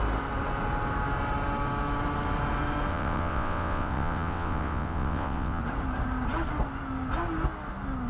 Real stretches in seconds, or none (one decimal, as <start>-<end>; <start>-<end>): 0.0-2.9; 5.6-8.1